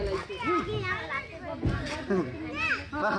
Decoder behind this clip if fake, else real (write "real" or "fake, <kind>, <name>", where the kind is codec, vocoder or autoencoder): real